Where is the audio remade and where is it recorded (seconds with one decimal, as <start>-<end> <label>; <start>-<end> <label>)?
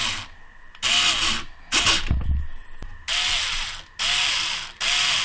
0.0-5.2 recorded